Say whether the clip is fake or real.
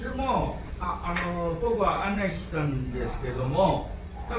fake